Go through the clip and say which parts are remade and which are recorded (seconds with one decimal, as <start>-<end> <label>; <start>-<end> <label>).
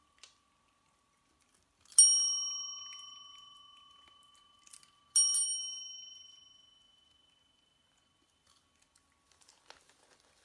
0.0-10.4 recorded